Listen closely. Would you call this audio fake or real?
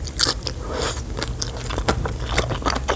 real